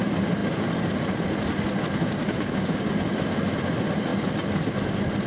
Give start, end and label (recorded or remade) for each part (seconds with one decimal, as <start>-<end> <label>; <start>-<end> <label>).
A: 0.0-2.0 recorded; 2.0-2.9 remade; 2.9-5.3 recorded